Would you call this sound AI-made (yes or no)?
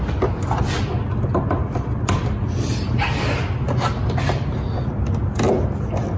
no